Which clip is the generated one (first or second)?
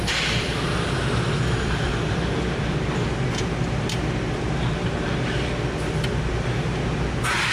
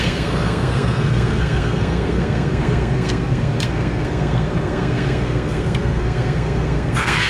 second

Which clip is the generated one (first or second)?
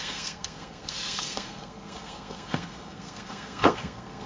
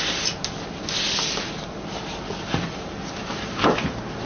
first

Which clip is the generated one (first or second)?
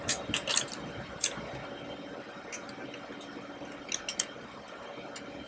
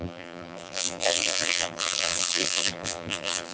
second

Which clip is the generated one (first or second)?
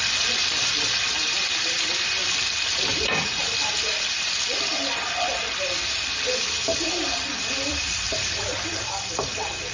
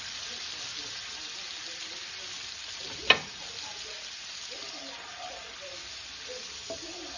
first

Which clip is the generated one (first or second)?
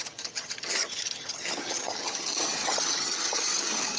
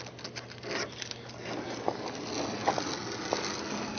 first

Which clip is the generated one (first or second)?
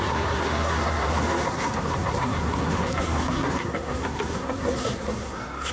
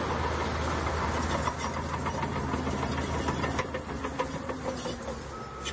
first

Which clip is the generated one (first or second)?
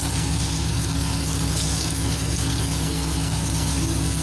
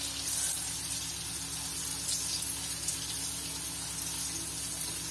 first